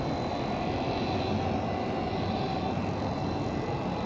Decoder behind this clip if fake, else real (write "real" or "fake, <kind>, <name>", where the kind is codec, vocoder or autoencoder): real